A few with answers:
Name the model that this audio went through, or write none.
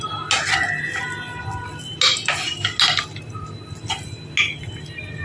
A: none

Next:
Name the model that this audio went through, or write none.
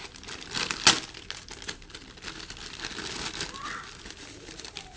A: none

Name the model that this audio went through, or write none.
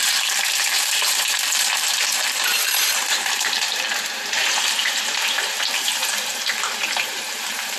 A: vocoder, BigVGAN v2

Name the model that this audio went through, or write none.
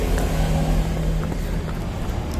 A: none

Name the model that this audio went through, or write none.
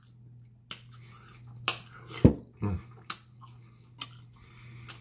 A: none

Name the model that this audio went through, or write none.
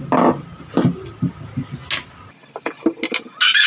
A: none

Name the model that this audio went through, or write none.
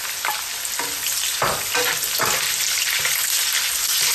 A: none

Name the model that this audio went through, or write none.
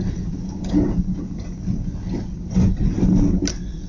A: none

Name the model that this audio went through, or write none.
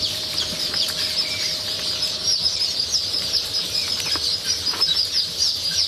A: vocoder, BigVGAN v2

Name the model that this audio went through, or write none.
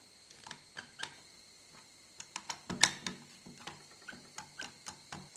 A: none